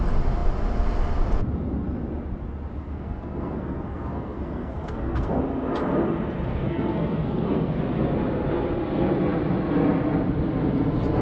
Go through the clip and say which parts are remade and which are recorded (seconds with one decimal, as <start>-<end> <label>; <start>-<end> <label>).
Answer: 0.0-2.8 recorded; 2.8-5.4 remade; 5.4-6.5 recorded; 6.5-7.8 remade; 7.8-11.2 recorded